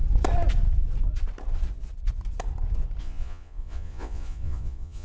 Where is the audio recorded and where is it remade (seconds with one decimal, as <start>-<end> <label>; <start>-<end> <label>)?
0.0-3.0 recorded; 3.0-5.0 remade